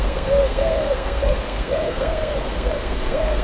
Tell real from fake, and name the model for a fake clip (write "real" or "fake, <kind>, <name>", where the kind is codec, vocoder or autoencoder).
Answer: fake, codec, SNAC